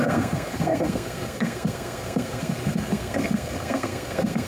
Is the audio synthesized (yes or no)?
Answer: yes